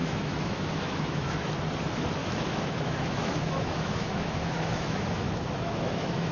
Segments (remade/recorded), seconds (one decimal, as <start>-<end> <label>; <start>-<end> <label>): 0.0-1.5 remade; 1.5-2.2 recorded; 2.2-6.3 remade